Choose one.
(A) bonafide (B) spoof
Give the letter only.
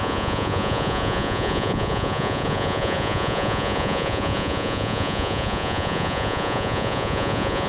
B